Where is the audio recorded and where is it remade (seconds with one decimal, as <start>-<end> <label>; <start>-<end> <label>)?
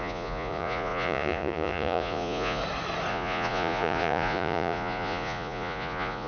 0.0-2.6 remade; 2.6-3.1 recorded; 3.1-6.3 remade